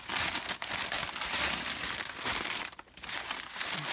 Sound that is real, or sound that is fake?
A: real